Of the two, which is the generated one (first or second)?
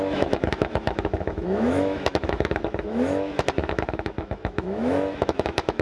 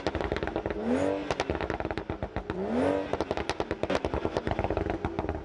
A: first